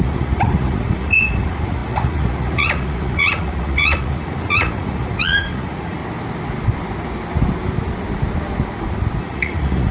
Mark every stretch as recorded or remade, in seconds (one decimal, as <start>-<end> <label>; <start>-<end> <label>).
0.0-6.0 remade; 6.0-9.2 recorded; 9.2-9.9 remade